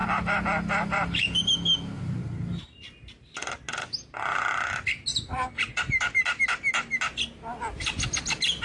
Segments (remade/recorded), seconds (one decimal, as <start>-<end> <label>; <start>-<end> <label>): 0.0-1.4 remade; 1.4-5.1 recorded; 5.1-6.4 remade; 6.4-8.6 recorded